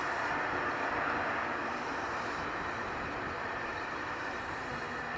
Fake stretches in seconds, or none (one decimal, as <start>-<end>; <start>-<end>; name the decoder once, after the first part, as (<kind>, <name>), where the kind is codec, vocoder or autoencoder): 1.6-4.7 (vocoder, BigVGAN v2)